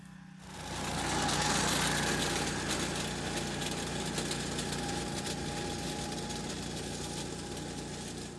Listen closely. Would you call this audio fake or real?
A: real